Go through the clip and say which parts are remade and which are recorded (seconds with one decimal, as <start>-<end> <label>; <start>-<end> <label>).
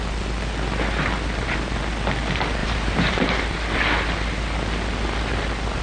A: 0.0-2.6 recorded; 2.6-3.2 remade; 3.2-5.8 recorded